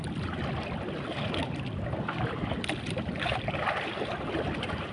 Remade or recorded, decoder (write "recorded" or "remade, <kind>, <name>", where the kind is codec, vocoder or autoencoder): remade, vocoder, BigVGAN v2